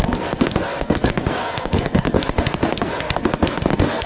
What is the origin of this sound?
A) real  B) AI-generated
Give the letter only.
B